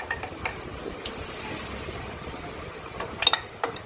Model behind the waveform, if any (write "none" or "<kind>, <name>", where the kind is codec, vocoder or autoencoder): none